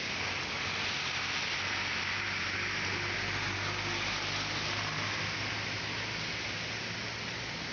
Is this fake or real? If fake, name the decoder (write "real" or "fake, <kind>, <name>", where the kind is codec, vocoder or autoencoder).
real